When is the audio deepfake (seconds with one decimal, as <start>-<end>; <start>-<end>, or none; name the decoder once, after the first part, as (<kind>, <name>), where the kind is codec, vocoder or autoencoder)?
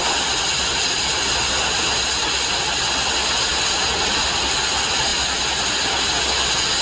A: none